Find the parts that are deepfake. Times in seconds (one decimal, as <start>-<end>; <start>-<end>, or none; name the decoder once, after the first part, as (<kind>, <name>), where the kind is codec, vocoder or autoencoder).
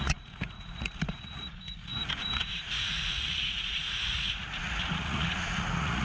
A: 0.0-6.0 (vocoder, Vocos)